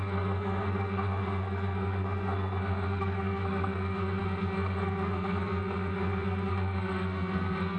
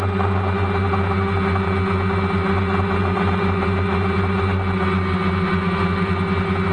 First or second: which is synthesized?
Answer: first